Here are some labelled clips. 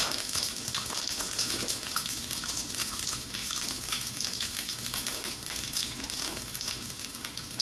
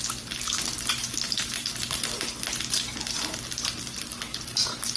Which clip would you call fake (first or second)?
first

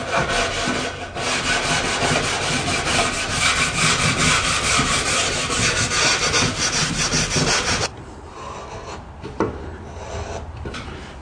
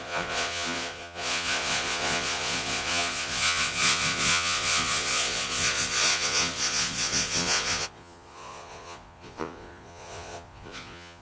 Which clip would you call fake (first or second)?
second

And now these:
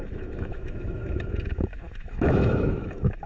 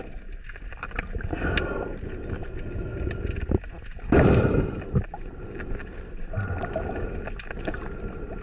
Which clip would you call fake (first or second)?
first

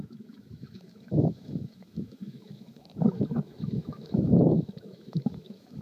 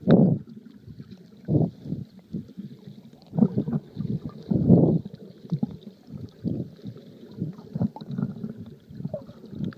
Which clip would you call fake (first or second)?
first